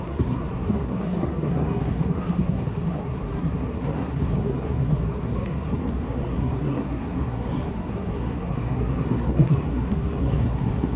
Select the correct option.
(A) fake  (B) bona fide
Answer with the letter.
A